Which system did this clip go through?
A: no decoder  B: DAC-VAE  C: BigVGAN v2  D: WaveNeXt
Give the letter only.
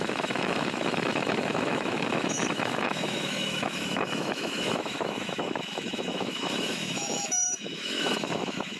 B